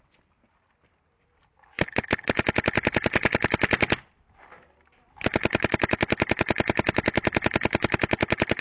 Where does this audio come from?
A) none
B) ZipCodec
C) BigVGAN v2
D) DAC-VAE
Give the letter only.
A